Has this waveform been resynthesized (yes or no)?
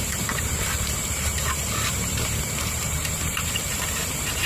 yes